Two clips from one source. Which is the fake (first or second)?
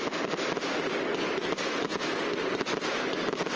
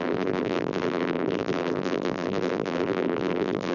second